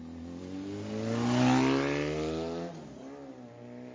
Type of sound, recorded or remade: recorded